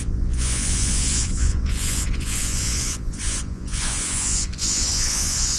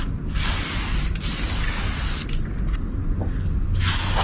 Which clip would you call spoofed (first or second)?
first